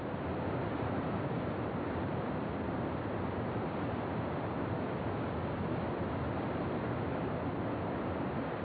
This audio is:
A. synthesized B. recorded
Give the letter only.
B